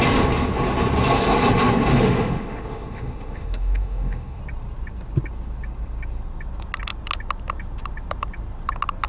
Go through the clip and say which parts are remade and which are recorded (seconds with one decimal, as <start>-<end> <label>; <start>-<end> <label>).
0.0-1.9 recorded; 1.9-4.4 remade; 4.4-9.1 recorded